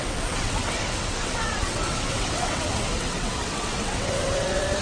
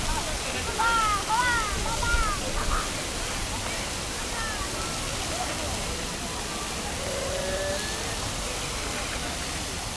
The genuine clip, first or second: second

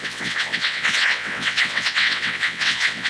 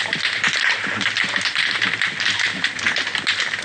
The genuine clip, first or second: second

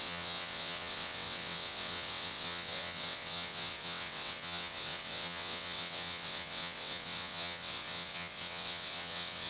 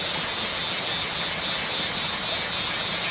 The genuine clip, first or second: second